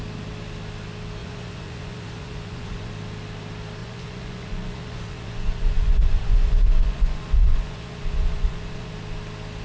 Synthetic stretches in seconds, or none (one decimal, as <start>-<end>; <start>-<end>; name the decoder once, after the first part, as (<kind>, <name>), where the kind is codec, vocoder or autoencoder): 1.2-2.9 (vocoder, Vocos); 3.8-8.9